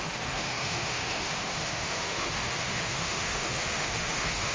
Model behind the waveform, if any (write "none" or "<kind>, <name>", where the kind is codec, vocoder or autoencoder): autoencoder, DAC-VAE